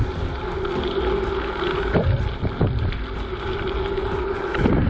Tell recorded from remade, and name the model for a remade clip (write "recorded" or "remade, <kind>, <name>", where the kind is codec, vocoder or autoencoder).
recorded